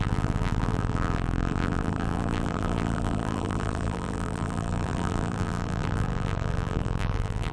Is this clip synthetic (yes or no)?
yes